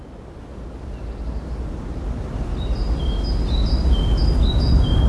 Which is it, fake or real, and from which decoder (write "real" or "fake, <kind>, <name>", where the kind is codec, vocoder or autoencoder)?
real